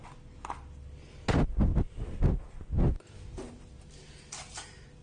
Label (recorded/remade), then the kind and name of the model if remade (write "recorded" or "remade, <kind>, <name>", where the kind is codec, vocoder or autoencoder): recorded